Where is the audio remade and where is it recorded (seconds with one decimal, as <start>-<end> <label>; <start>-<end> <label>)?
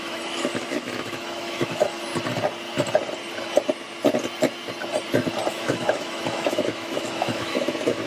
0.0-2.1 remade; 2.1-5.5 recorded; 5.5-8.1 remade